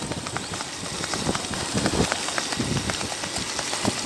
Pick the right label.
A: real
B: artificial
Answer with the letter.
A